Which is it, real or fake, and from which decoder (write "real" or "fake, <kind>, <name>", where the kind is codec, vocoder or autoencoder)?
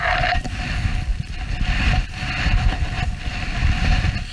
real